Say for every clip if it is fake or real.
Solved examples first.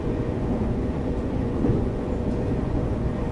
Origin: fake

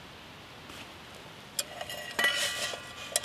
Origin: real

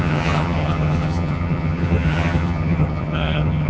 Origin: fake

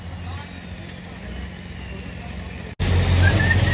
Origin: real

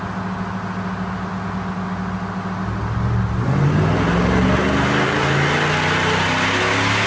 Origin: real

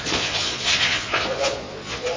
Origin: fake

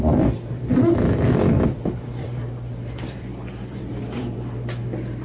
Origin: fake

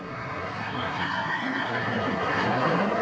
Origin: fake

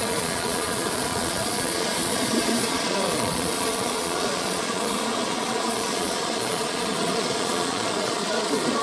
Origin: fake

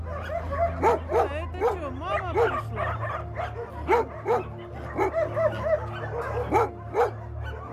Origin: real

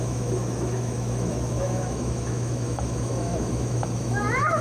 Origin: fake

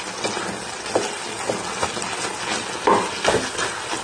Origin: real